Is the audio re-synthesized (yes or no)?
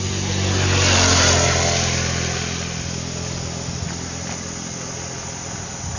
no